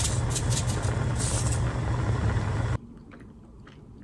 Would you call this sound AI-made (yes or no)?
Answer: no